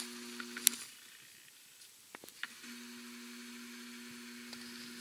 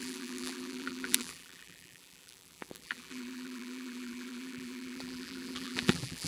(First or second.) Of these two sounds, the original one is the first